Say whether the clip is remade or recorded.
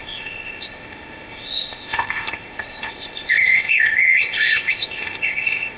remade